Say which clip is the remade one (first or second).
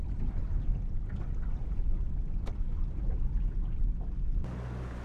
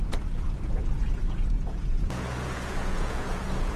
second